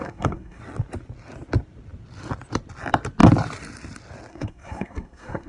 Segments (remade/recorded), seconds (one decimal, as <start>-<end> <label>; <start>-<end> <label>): 0.0-0.6 remade; 0.6-4.3 recorded; 4.3-5.5 remade